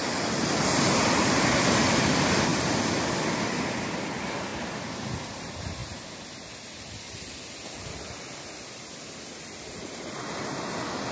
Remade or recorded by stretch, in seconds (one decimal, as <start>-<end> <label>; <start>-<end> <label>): 0.0-11.1 recorded